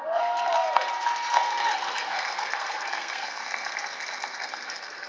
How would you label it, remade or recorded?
remade